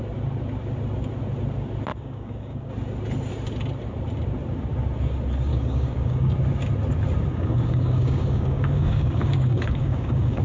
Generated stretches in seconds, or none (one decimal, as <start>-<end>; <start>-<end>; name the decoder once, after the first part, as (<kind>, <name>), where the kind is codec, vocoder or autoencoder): 1.9-2.7 (codec, DAC); 5.5-6.3; 7.3-10.4